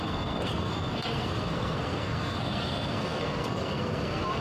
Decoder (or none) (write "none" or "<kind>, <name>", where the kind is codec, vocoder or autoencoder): codec, SNAC